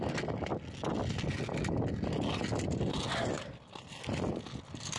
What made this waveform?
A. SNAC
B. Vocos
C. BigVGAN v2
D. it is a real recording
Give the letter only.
D